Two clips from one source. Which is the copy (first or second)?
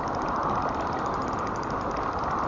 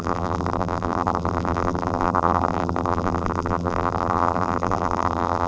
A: second